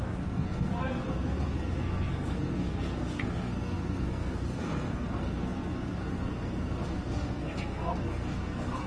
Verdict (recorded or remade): remade